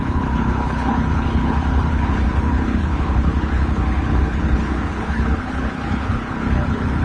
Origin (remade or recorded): remade